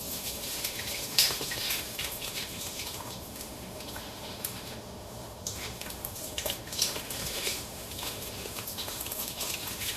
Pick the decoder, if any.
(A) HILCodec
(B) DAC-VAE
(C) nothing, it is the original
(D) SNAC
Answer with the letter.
B